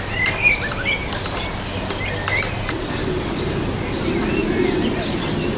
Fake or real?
real